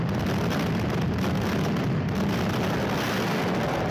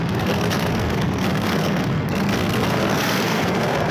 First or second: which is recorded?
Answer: first